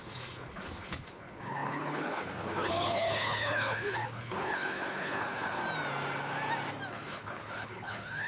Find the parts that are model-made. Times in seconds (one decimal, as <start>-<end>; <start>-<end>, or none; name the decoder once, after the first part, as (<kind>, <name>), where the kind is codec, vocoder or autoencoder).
0.0-5.6 (codec, HILCodec); 6.9-8.3

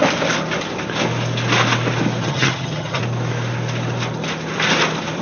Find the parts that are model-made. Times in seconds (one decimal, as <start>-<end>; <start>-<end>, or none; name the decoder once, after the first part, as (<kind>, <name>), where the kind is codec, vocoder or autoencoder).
2.2-3.0 (vocoder, HiFi-GAN)

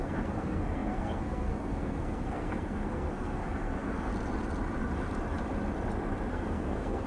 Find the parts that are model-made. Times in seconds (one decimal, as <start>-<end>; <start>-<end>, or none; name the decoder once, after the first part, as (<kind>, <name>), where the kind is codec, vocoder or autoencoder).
0.0-4.1 (codec, SNAC); 6.3-7.1

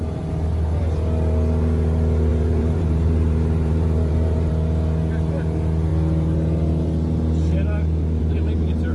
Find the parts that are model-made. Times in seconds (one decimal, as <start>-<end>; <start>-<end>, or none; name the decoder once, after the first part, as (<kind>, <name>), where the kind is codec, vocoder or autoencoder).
2.3-4.5 (vocoder, BigVGAN v2)

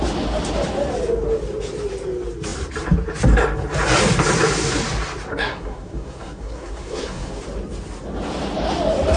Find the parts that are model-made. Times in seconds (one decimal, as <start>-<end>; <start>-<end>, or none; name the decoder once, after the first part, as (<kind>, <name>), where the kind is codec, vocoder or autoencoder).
5.3-7.4 (codec, SNAC)